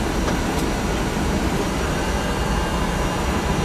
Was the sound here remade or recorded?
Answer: recorded